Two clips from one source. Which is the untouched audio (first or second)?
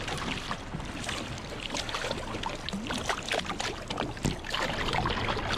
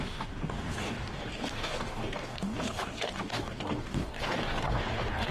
first